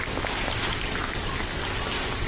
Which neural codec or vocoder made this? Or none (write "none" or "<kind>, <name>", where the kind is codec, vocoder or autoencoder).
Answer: none